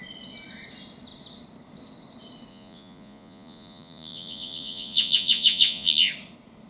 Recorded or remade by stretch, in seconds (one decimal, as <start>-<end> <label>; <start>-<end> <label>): 0.0-2.5 recorded; 2.5-6.1 remade; 6.1-6.7 recorded